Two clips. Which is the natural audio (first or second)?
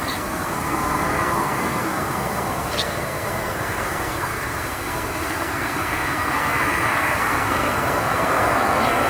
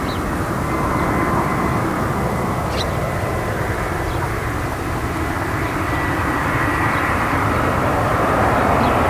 second